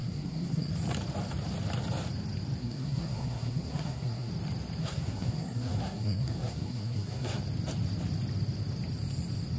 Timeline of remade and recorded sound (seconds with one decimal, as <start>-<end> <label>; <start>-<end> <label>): 0.0-0.7 remade; 0.7-2.6 recorded; 2.6-4.3 remade; 4.3-4.8 recorded; 4.8-7.4 remade; 7.4-9.6 recorded